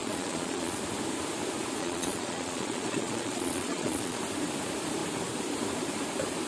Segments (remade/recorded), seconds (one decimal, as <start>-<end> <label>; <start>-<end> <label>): 0.0-0.8 remade; 0.8-1.8 recorded; 1.8-4.2 remade; 4.2-6.5 recorded